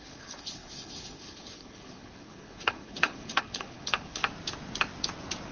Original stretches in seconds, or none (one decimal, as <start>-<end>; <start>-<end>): 4.2-5.5